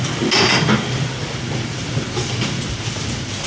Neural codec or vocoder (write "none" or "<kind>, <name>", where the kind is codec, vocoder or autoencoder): none